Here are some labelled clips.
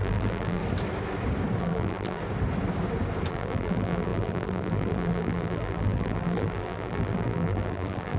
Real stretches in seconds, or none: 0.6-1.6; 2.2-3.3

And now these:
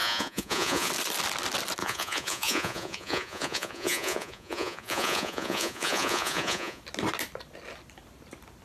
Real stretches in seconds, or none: 0.9-1.8; 6.8-8.6

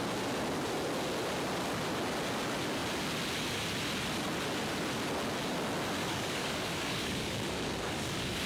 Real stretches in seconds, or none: 0.0-6.0

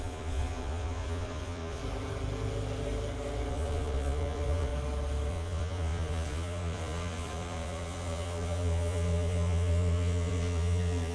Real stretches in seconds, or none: 1.8-3.5; 4.7-5.3

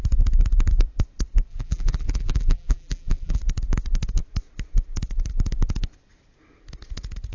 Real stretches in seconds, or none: 0.0-1.5; 3.4-7.3